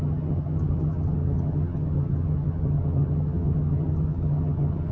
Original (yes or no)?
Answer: no